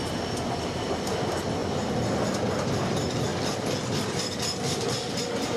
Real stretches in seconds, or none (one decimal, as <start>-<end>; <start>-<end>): 0.0-5.6

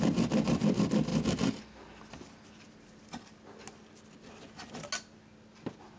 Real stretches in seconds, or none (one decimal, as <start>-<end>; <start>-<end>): 0.0-6.0

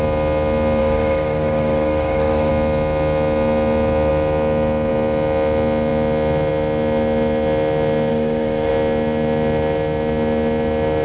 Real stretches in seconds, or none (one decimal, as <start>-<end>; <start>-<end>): 0.0-0.8; 2.5-8.1; 8.7-11.0